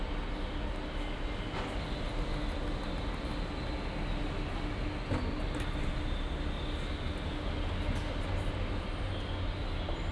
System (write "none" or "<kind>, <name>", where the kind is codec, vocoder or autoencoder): none